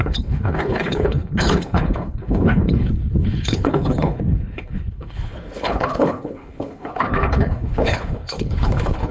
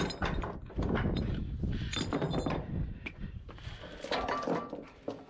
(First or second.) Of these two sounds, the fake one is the first